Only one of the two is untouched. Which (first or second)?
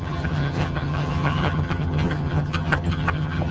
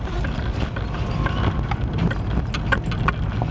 second